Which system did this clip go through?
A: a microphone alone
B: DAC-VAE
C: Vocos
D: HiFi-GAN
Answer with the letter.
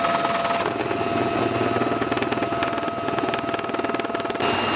A